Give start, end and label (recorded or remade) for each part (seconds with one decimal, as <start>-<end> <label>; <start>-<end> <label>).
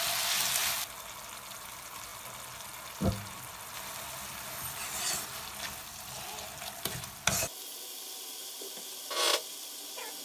0.0-10.2 recorded